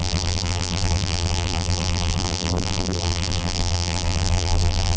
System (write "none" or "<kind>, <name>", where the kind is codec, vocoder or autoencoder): vocoder, BigVGAN v2